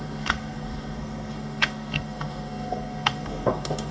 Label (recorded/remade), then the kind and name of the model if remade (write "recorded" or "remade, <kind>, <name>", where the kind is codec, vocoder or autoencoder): remade, codec, SNAC